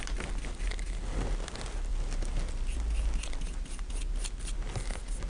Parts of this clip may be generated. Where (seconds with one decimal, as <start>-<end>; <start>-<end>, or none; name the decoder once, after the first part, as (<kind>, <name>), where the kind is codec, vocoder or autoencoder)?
none